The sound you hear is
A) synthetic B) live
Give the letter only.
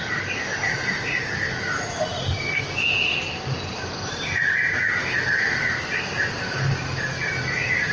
B